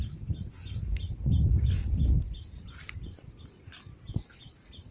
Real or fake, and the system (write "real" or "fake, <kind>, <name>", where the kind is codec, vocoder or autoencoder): real